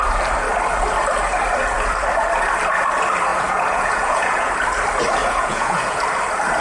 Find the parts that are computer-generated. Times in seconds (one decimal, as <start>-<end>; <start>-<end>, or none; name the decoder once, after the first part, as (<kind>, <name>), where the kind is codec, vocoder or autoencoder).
3.3-4.5 (vocoder, Vocos); 5.2-6.0